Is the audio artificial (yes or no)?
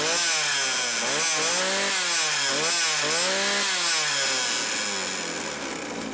no